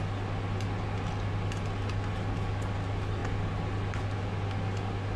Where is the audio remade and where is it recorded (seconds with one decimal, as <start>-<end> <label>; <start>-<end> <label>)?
0.0-5.2 recorded